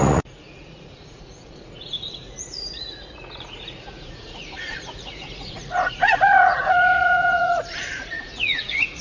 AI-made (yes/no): yes